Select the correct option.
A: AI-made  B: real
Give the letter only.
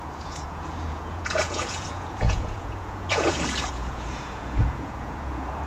A